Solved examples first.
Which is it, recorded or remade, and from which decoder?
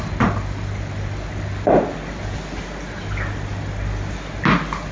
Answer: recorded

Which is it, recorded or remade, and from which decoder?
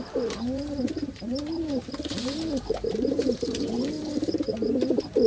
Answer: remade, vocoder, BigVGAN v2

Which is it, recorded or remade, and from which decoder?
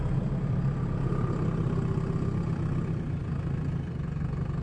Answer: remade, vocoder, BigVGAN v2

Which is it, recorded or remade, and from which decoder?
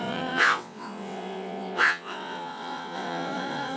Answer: remade, vocoder, WaveNeXt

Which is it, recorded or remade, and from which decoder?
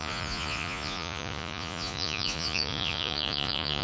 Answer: remade, vocoder, Vocos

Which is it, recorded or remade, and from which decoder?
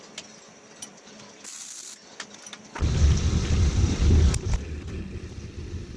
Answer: recorded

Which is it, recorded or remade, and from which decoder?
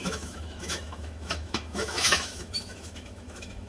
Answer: remade, autoencoder, DAC-VAE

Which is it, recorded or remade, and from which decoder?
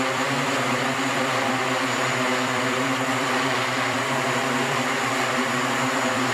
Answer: remade, vocoder, BigVGAN v2